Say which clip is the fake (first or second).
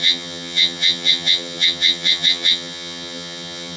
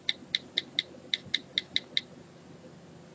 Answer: first